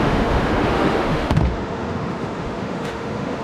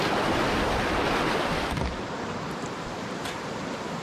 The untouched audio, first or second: second